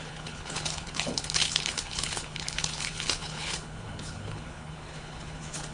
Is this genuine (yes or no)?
no